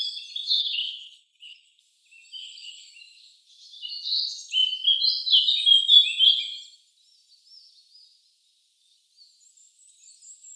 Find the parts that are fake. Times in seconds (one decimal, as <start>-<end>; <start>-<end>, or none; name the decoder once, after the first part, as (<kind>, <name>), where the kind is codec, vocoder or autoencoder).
0.6-1.8 (codec, HILCodec); 2.4-2.9